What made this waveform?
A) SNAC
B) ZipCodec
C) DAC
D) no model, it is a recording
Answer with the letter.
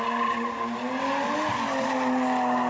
D